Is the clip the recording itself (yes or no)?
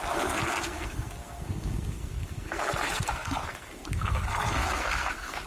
no